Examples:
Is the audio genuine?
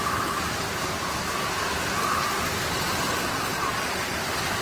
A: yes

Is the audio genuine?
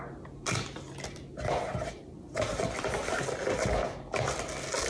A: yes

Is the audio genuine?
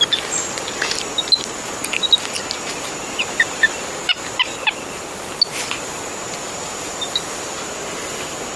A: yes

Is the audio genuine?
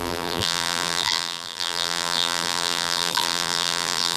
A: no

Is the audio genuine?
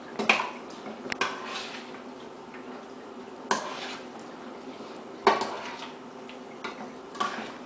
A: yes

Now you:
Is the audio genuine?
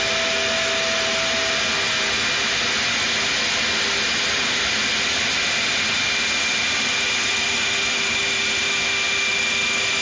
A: yes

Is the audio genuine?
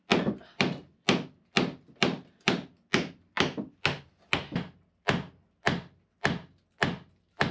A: yes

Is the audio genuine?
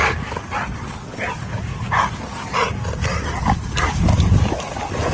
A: yes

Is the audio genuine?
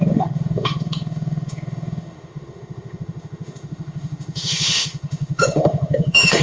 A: no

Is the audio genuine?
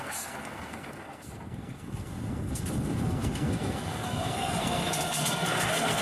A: no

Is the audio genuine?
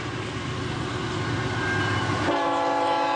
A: yes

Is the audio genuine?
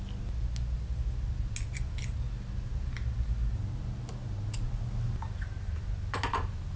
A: yes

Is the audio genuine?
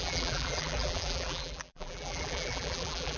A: no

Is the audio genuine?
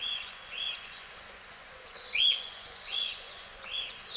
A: no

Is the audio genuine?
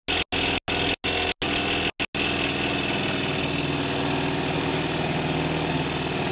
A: yes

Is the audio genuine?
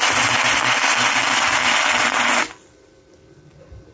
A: yes